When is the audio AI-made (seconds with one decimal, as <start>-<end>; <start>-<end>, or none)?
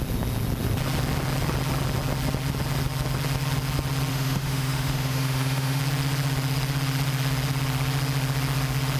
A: 4.1-5.8